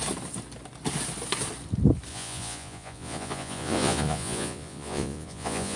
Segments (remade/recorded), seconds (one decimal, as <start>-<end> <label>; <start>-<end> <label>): 0.0-2.1 recorded; 2.1-5.8 remade